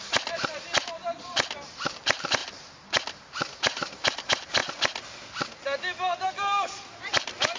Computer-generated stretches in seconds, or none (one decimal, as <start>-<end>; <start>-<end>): 0.0-2.4; 3.6-4.6; 6.3-7.6